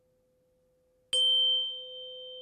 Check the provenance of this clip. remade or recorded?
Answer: recorded